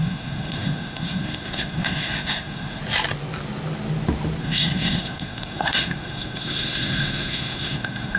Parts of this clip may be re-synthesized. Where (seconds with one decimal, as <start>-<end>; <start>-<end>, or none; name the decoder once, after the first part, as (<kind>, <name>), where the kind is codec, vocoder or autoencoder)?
0.0-2.8 (codec, SNAC); 4.4-8.2